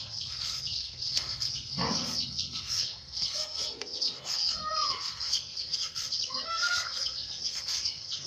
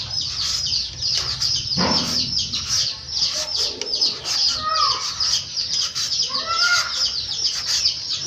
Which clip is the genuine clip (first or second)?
second